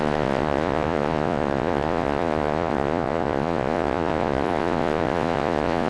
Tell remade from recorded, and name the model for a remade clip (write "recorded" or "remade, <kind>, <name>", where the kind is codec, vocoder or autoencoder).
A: remade, vocoder, Vocos